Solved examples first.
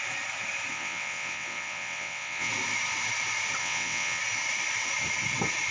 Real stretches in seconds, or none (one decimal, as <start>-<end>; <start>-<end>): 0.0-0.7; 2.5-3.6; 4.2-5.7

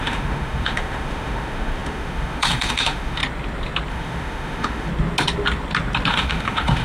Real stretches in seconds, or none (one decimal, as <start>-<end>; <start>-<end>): 3.2-3.9; 4.9-6.1

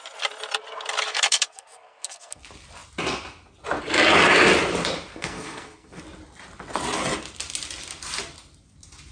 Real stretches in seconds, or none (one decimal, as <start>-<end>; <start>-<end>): 0.0-1.1; 2.4-5.1; 6.0-9.1